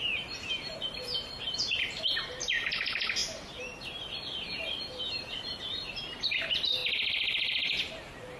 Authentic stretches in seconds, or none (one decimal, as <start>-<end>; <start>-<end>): 6.8-8.4